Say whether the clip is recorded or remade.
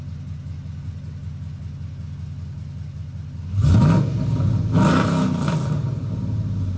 recorded